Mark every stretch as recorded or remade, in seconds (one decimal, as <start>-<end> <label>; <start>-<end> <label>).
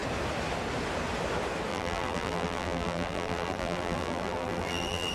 0.0-1.7 recorded; 1.7-5.1 remade